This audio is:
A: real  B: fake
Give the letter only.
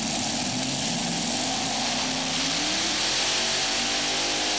A